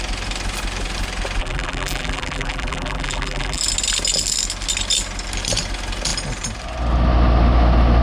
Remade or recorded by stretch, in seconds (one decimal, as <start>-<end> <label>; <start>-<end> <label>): 0.0-1.4 recorded; 1.4-3.6 remade; 3.6-8.0 recorded